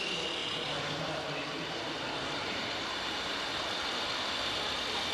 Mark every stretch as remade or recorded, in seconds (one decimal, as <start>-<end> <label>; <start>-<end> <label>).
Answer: 0.0-0.4 recorded; 0.4-3.5 remade; 3.5-5.1 recorded